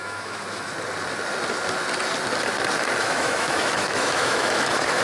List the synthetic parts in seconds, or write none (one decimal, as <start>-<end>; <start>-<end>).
0.0-0.7; 3.0-5.0